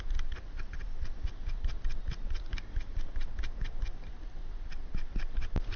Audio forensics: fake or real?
real